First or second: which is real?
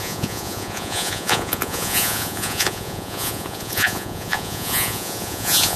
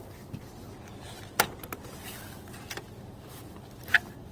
second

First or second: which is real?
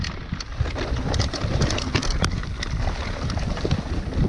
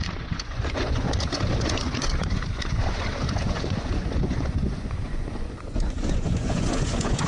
first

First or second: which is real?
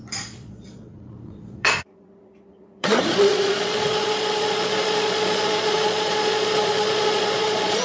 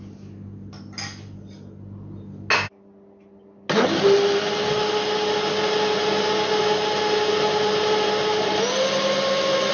second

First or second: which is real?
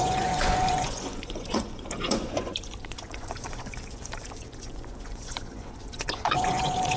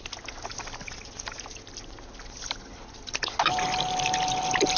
second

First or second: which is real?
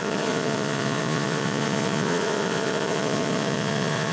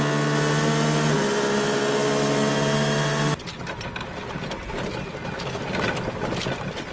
second